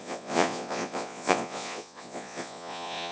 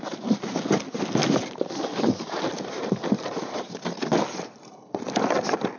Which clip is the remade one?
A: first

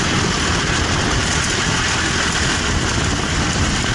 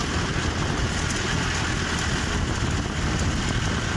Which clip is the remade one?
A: first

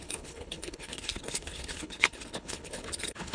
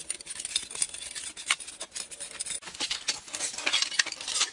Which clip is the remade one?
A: first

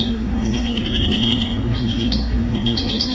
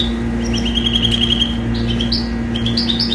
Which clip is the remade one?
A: first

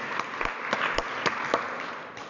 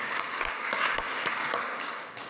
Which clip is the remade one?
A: second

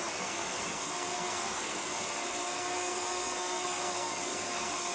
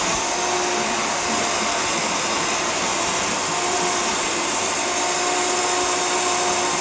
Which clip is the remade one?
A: first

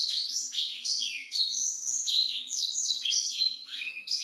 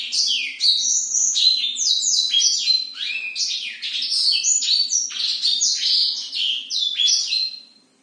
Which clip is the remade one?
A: first